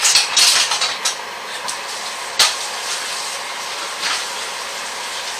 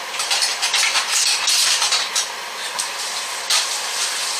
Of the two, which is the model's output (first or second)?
second